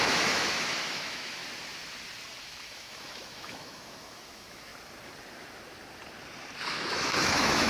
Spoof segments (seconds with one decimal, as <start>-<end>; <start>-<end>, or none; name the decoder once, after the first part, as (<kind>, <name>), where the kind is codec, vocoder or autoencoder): 0.0-1.4 (autoencoder, DAC-VAE); 2.4-4.7; 6.7-7.7